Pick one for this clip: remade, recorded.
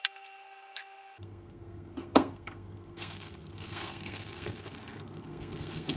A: remade